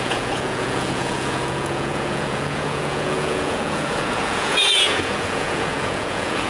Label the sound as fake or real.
fake